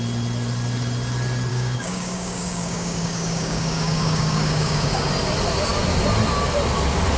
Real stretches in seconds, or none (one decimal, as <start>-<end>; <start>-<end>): 0.0-1.5; 5.1-7.2